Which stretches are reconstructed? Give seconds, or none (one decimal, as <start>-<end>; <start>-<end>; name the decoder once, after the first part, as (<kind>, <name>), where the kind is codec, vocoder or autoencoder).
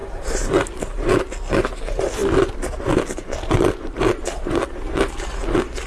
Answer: 0.0-1.3 (vocoder, BigVGAN v2)